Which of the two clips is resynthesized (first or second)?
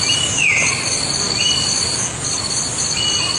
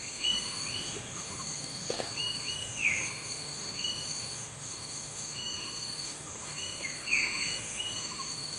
second